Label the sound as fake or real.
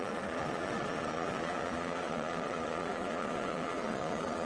fake